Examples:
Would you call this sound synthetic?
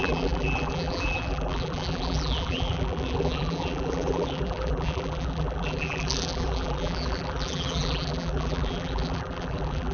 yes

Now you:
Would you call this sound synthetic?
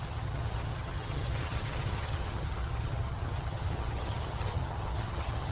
yes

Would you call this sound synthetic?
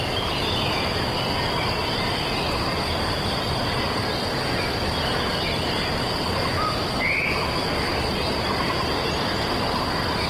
no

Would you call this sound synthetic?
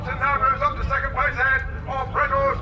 no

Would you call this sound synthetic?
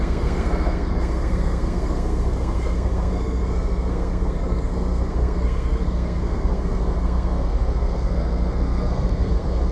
yes